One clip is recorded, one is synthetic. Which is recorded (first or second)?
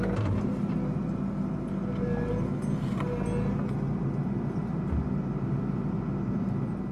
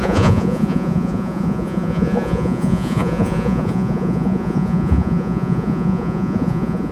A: first